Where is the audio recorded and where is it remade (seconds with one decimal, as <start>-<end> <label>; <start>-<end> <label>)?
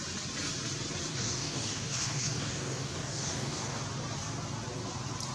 0.0-1.1 recorded; 1.1-3.8 remade; 3.8-5.3 recorded